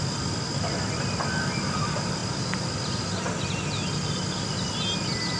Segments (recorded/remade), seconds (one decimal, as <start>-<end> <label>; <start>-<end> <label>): 0.0-5.4 recorded